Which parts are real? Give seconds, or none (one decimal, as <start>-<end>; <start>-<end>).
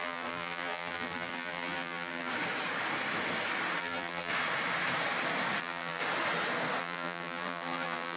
2.3-3.8; 4.3-5.6; 6.0-6.8